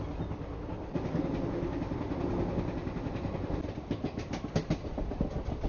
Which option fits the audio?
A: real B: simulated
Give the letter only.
A